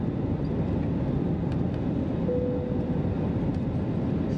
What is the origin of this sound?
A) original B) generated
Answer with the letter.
A